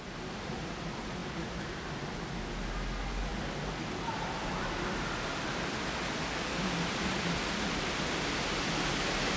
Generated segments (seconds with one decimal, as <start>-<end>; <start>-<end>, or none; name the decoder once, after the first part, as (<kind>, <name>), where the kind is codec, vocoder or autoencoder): none